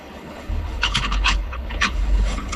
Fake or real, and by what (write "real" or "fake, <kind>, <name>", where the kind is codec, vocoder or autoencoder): fake, codec, HILCodec